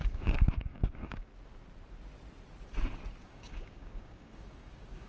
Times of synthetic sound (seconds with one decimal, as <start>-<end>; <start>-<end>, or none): 0.0-1.3; 3.2-5.1